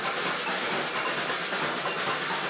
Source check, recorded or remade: recorded